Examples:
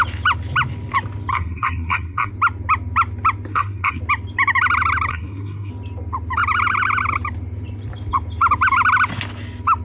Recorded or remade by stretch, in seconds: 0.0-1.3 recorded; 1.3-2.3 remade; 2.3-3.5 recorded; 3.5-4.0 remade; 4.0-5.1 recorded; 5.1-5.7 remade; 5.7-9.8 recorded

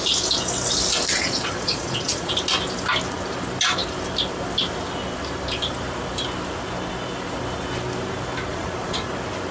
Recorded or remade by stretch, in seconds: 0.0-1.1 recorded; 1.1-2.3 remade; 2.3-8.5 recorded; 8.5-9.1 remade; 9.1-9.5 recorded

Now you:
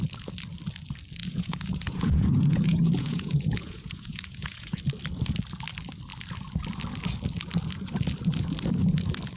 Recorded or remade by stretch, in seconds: 0.0-1.2 recorded; 1.2-4.8 remade; 4.8-9.4 recorded